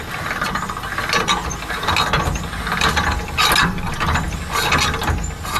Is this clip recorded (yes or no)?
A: yes